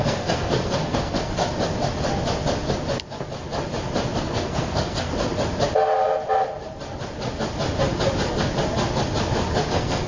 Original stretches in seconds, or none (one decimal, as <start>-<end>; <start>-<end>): 1.4-4.2; 5.1-9.7